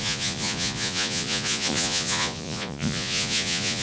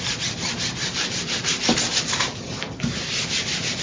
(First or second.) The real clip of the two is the second